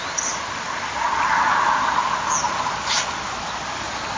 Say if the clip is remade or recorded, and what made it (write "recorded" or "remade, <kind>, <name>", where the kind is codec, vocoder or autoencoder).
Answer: recorded